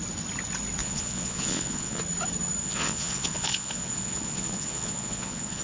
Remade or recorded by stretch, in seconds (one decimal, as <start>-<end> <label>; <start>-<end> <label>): 0.0-0.8 recorded; 0.8-2.0 remade; 2.0-2.6 recorded; 2.6-5.6 remade